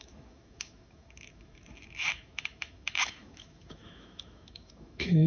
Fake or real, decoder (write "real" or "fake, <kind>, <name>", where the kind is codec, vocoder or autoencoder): fake, autoencoder, DAC-VAE